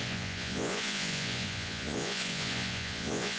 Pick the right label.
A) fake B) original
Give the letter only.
A